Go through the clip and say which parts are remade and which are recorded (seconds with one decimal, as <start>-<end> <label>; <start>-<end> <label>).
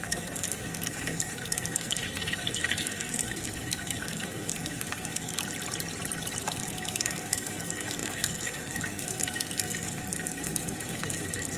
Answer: 0.0-5.4 remade; 5.4-6.4 recorded; 6.4-11.6 remade